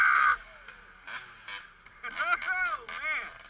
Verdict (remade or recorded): recorded